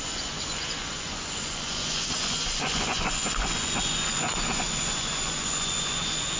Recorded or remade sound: remade